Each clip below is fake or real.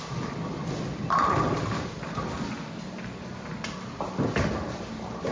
real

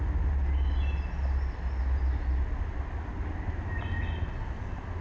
real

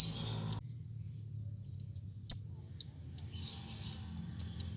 real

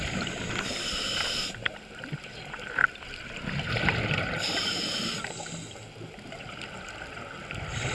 real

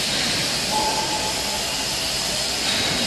real